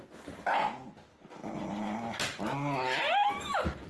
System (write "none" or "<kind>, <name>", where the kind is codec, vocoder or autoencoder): none